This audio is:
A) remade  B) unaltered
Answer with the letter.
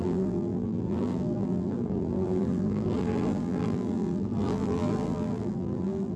A